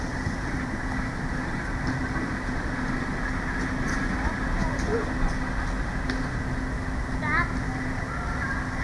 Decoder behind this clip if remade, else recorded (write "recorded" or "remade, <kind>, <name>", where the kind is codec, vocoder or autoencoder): recorded